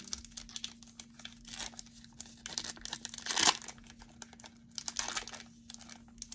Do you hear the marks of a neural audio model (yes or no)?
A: no